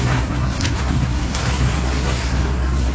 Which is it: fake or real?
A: fake